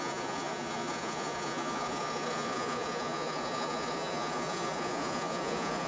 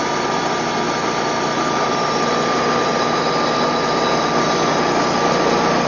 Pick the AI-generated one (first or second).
first